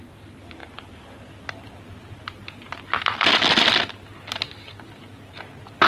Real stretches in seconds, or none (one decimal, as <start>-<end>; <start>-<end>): 0.0-5.9